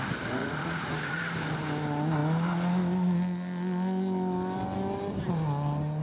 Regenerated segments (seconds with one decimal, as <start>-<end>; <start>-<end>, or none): 0.4-1.2